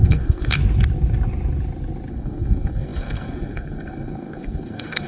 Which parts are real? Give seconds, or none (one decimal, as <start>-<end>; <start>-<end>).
0.6-2.1